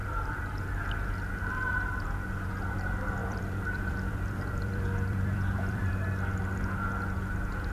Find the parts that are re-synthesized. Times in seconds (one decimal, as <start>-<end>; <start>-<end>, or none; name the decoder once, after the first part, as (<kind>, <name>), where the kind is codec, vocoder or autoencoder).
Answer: 0.0-0.6 (vocoder, BigVGAN v2); 3.2-5.9